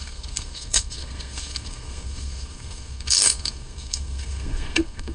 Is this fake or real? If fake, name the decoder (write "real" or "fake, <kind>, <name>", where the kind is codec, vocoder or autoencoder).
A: fake, codec, SNAC